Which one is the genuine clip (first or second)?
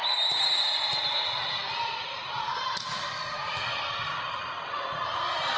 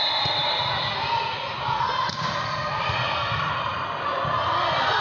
second